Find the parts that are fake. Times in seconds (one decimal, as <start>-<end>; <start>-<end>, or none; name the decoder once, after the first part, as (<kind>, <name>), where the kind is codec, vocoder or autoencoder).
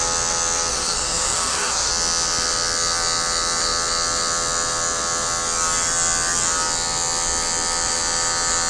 0.7-1.9 (codec, SNAC)